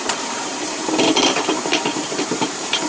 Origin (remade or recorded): remade